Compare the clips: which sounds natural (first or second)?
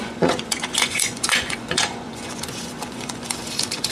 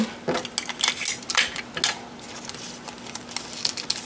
second